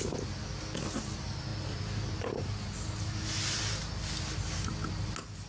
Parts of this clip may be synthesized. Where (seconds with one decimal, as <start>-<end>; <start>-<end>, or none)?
none